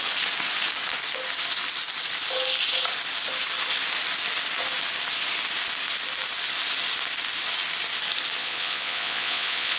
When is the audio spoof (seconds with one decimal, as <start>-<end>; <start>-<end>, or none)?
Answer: 8.4-9.8